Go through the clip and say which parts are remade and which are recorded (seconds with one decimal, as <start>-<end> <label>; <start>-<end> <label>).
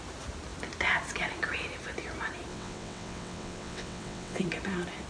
0.0-2.5 recorded; 2.5-4.4 remade; 4.4-5.1 recorded